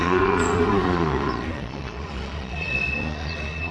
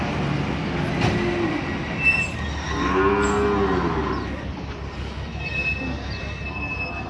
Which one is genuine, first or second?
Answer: second